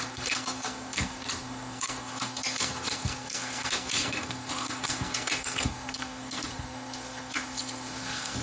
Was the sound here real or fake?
fake